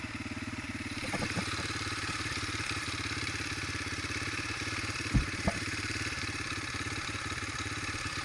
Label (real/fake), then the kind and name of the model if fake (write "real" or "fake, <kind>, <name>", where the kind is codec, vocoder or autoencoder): fake, vocoder, BigVGAN v2